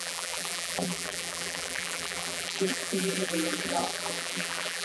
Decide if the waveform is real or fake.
fake